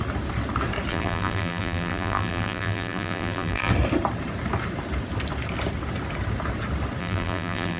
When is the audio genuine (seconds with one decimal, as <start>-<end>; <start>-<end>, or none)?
0.0-0.9; 3.7-7.0